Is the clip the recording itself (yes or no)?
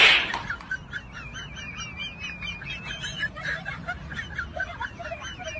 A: yes